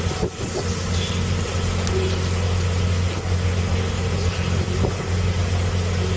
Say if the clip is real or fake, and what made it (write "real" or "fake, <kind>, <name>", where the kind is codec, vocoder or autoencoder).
real